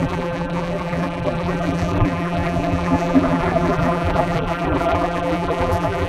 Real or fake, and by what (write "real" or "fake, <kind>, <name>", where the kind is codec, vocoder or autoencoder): fake, vocoder, BigVGAN v2